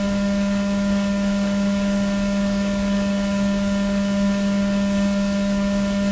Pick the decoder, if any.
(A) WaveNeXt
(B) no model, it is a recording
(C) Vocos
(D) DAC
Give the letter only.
D